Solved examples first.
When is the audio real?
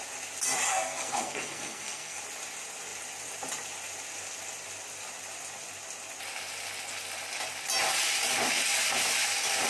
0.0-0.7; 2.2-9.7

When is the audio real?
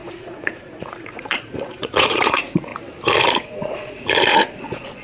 2.7-3.2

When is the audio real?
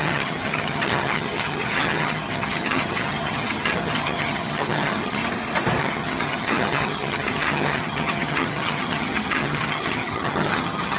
5.2-5.8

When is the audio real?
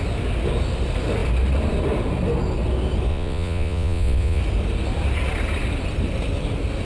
0.0-3.1; 4.4-6.8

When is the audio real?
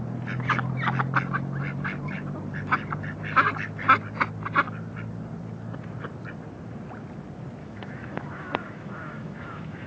0.0-7.6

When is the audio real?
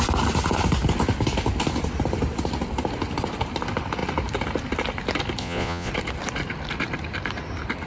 0.0-5.4; 5.9-7.9